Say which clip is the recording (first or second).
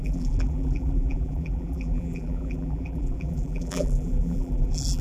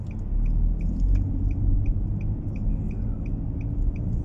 second